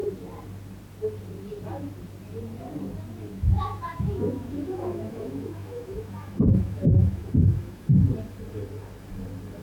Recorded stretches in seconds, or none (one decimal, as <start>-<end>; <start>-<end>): 0.0-3.3; 7.9-9.6

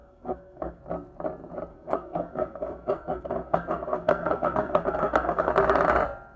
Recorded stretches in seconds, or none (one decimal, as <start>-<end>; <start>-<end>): 0.8-1.7; 5.5-6.4

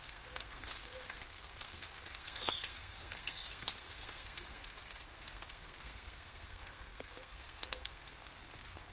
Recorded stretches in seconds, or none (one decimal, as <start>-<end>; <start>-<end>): none

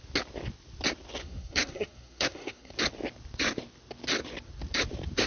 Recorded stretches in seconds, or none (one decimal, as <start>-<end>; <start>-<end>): 0.0-1.2; 2.7-5.3

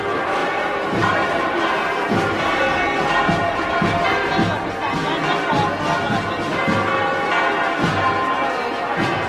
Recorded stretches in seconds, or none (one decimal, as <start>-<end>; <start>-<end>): 0.0-0.4; 2.6-9.3